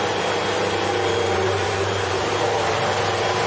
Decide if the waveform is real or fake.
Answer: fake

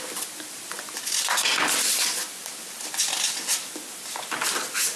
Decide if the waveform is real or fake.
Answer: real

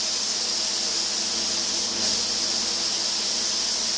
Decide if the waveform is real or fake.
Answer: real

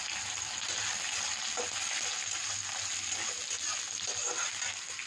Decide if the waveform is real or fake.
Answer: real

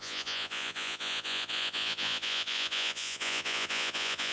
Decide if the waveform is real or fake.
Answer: fake